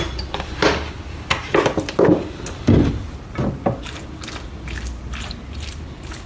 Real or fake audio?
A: real